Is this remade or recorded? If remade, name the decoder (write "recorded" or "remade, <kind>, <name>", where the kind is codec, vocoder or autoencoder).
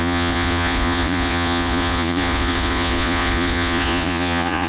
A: remade, vocoder, Vocos